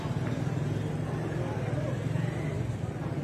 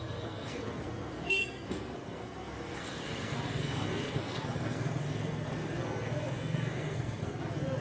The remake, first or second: second